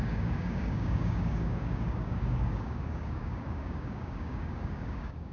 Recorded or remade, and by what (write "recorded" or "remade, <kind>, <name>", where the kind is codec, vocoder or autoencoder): remade, codec, DAC